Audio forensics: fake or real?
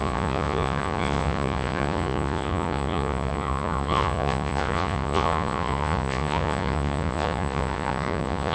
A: fake